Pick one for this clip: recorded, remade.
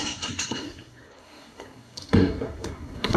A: remade